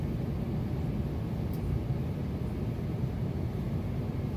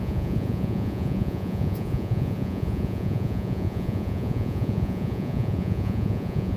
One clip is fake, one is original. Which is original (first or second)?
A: first